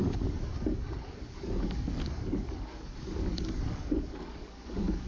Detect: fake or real fake